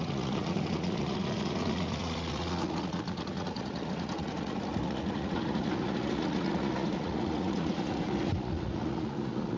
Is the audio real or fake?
fake